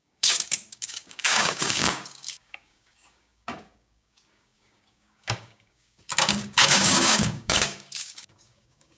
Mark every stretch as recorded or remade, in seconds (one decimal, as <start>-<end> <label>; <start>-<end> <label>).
0.0-9.0 remade